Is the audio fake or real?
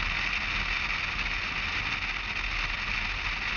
real